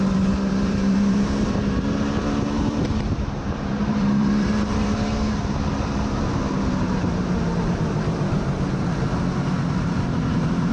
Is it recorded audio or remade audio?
remade